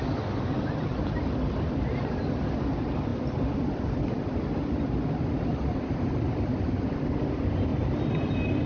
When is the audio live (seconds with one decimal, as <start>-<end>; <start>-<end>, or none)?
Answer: 0.0-3.1; 7.1-8.7